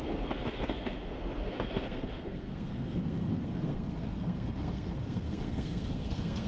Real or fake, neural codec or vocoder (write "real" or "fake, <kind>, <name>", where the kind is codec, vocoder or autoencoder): fake, codec, SNAC